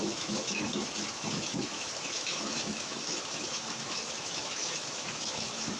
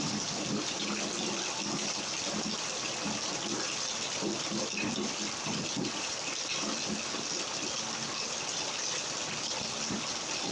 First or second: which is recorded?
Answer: second